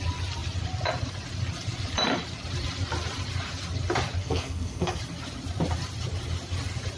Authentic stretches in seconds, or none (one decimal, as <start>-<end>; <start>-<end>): 0.0-4.2; 5.0-7.0